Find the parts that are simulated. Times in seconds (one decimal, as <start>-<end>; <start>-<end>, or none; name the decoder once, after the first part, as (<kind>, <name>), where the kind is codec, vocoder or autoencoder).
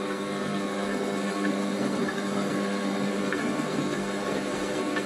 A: 0.0-5.1 (codec, SNAC)